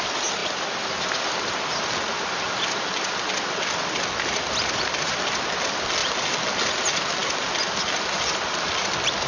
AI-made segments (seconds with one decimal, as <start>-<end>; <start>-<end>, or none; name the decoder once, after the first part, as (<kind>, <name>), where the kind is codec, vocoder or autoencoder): none